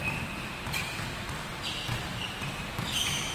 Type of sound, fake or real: real